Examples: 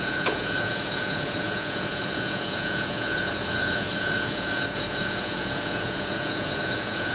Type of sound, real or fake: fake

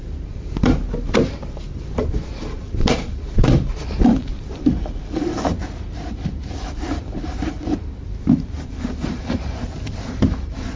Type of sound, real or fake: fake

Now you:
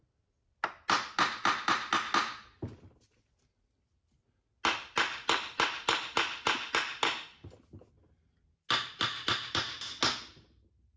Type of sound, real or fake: real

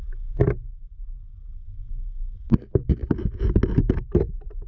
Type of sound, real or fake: real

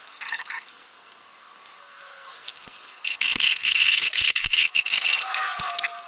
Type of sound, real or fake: fake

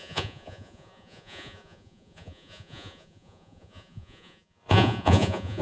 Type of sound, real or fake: fake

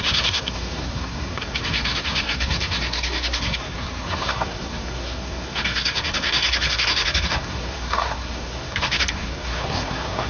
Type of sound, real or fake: fake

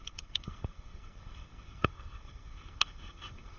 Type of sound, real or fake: fake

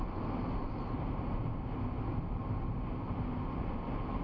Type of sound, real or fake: real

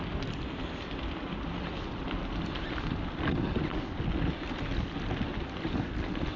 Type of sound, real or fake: real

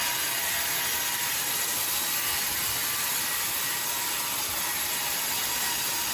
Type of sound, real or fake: real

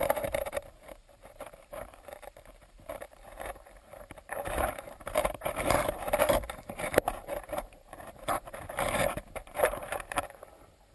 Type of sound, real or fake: fake